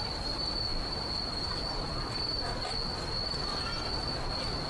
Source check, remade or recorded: recorded